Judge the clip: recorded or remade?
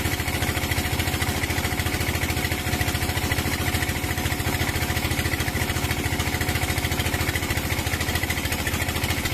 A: recorded